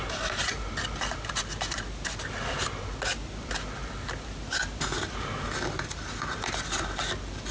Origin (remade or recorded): recorded